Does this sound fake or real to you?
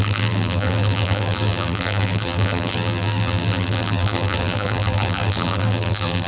fake